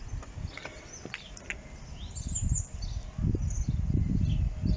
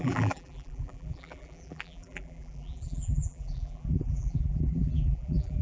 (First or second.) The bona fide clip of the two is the first